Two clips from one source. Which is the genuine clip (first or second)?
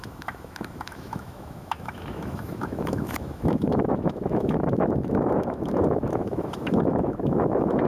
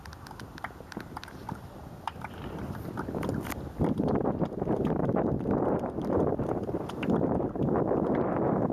second